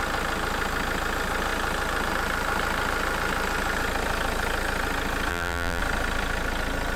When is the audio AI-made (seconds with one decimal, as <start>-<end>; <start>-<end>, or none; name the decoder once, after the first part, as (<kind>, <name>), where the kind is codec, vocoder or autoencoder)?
5.3-5.8 (vocoder, BigVGAN v2)